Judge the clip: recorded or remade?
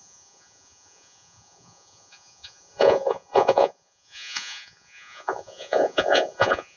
remade